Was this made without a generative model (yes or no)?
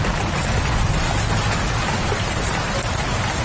yes